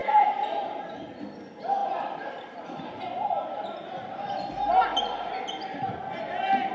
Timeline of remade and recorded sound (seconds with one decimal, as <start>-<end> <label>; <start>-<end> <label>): 0.0-1.2 remade; 1.2-1.8 recorded; 1.8-3.0 remade; 3.0-4.9 recorded; 4.9-6.2 remade; 6.2-6.7 recorded